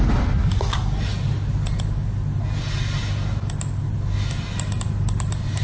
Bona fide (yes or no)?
yes